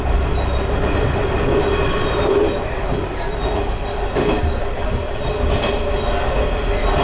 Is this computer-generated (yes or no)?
no